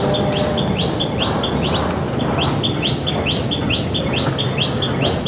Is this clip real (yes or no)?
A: yes